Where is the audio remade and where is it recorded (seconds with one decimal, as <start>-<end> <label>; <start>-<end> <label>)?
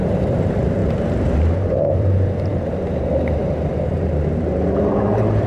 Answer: 0.0-5.5 remade